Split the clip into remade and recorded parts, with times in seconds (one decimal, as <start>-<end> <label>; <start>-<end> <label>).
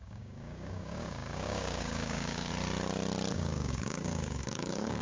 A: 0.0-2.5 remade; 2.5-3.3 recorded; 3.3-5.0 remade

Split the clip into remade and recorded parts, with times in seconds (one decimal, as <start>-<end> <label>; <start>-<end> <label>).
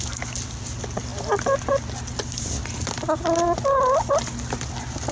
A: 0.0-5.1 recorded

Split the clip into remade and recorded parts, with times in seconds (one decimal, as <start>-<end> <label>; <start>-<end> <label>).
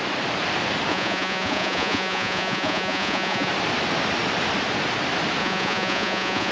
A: 0.0-0.9 recorded; 0.9-3.5 remade; 3.5-5.4 recorded; 5.4-6.5 remade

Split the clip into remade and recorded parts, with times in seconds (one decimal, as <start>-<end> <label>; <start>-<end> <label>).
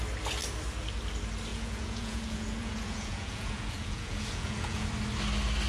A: 0.0-1.5 recorded; 1.5-4.9 remade; 4.9-5.7 recorded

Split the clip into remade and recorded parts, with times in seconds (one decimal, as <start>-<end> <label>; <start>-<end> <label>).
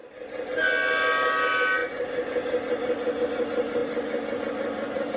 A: 0.0-5.2 recorded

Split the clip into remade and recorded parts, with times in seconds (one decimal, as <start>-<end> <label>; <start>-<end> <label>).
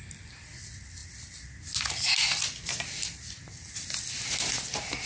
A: 0.0-5.1 recorded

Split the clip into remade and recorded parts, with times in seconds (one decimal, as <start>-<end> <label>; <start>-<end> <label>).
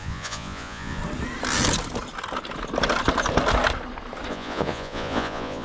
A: 0.0-1.0 remade; 1.0-4.3 recorded; 4.3-5.6 remade